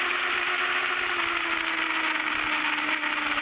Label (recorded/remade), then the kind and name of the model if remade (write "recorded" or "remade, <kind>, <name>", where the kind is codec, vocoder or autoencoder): recorded